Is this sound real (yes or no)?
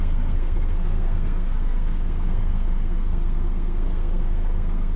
no